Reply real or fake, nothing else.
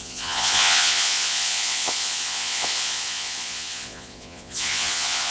fake